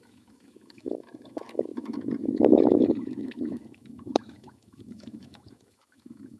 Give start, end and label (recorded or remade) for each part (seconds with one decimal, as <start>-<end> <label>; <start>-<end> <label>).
0.0-6.4 remade

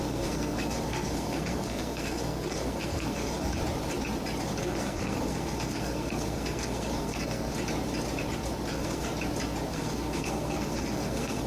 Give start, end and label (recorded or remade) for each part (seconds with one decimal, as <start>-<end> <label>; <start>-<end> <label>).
0.0-3.6 remade; 3.6-4.6 recorded; 4.6-7.5 remade; 7.5-8.7 recorded; 8.7-9.1 remade; 9.1-9.7 recorded; 9.7-11.5 remade